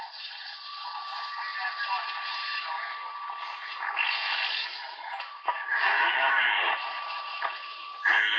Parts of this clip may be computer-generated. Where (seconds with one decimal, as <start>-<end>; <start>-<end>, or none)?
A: 4.6-6.5